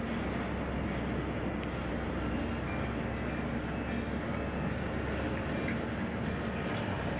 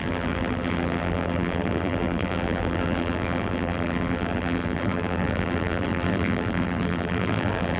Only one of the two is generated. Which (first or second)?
second